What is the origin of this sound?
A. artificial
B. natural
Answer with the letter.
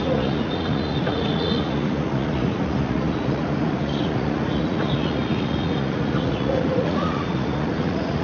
A